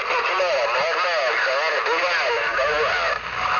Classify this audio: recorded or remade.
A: recorded